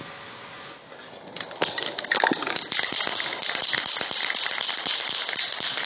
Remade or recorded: recorded